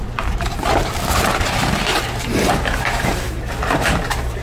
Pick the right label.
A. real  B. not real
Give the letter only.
B